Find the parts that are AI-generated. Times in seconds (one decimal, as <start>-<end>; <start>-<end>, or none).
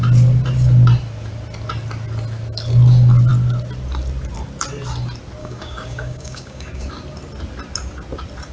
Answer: 5.4-6.9